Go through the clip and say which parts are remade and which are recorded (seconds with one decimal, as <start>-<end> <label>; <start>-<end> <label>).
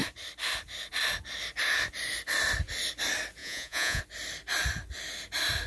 0.0-3.4 recorded; 3.4-4.0 remade; 4.0-5.7 recorded